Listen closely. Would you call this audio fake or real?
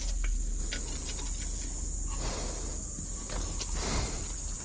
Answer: real